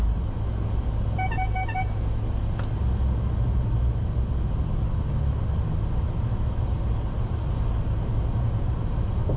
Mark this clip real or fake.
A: real